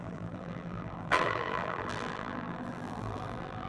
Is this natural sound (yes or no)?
no